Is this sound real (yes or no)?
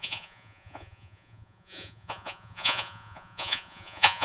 no